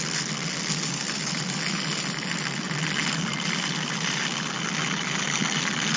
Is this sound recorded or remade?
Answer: recorded